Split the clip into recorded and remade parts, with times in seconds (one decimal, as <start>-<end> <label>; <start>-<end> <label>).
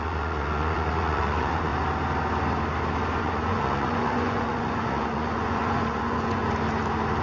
0.0-1.7 remade; 1.7-3.2 recorded; 3.2-6.4 remade; 6.4-7.2 recorded